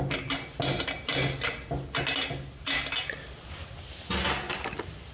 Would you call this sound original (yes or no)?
yes